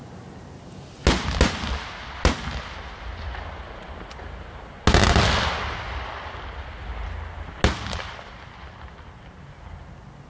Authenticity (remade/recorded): recorded